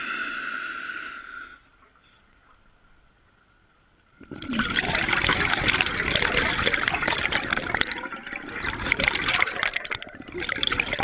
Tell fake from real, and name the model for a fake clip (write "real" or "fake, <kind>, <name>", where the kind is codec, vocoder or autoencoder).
real